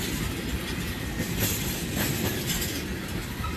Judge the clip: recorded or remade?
recorded